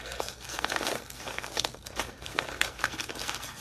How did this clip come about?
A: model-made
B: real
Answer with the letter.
A